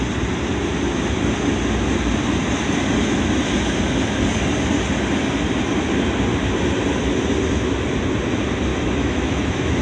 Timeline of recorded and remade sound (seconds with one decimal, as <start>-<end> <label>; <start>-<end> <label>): 0.0-8.7 recorded; 8.7-9.8 remade